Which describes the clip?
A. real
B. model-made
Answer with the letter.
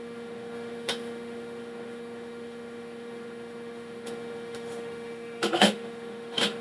B